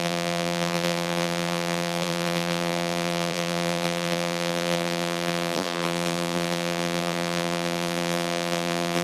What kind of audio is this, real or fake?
fake